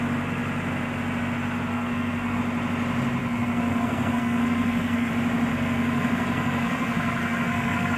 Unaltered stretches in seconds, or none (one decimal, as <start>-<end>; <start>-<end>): 0.0-1.7; 2.4-3.2; 5.1-5.5